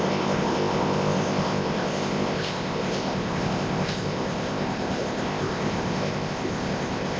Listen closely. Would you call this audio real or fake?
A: fake